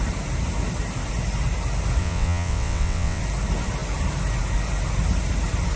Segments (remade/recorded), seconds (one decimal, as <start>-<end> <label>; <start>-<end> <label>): 0.0-2.0 recorded; 2.0-3.2 remade; 3.2-5.8 recorded